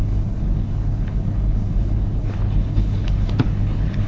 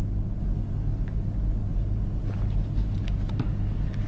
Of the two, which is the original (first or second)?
second